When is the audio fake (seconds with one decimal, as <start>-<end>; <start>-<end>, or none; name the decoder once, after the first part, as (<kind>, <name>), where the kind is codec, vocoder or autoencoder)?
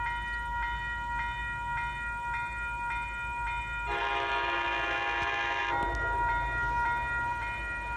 none